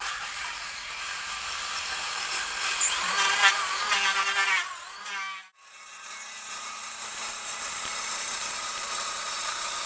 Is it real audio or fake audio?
fake